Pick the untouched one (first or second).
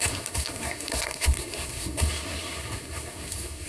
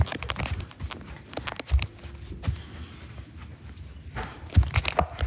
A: second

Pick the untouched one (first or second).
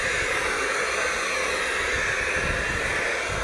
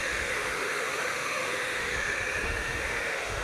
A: first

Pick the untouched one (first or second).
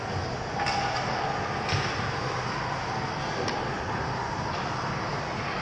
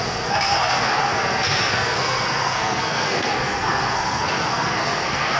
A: first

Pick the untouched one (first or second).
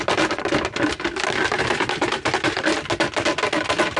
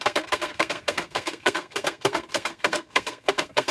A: first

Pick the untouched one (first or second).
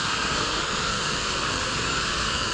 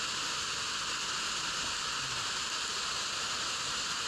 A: second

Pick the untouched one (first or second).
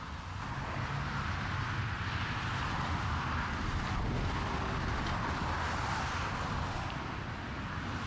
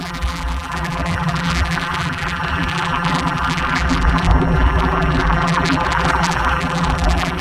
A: first